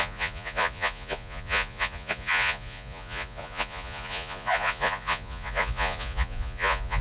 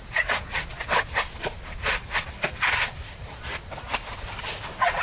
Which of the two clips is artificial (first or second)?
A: first